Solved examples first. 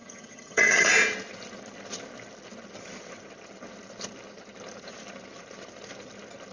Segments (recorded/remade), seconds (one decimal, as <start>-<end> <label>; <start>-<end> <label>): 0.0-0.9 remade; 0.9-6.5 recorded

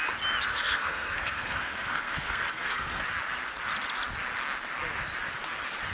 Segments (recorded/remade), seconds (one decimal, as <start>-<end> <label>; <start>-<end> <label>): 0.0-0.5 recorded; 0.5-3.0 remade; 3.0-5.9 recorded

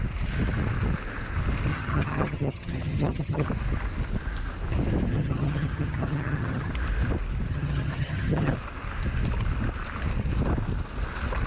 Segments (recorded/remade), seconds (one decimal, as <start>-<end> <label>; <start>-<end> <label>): 0.0-1.7 recorded; 1.7-3.5 remade; 3.5-5.1 recorded; 5.1-6.7 remade; 6.7-7.5 recorded; 7.5-8.5 remade; 8.5-11.5 recorded

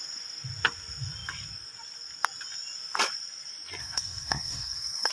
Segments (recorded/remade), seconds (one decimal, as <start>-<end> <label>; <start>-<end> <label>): 0.0-3.8 recorded; 3.8-5.1 remade

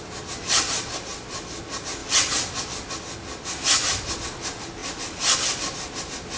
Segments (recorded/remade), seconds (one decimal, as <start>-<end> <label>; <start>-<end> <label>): 0.0-1.1 recorded; 1.1-1.6 remade; 1.6-2.0 recorded; 2.0-2.9 remade; 2.9-6.4 recorded

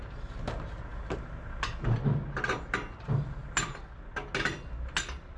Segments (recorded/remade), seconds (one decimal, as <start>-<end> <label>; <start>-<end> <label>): 0.0-5.4 recorded